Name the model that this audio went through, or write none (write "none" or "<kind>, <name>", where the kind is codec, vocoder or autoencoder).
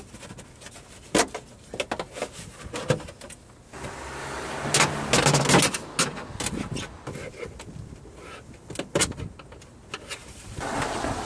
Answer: none